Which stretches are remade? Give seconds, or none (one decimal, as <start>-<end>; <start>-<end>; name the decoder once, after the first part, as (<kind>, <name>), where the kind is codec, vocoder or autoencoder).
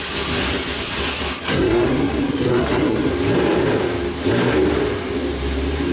1.5-3.1 (codec, SNAC)